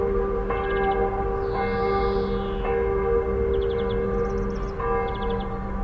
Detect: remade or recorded recorded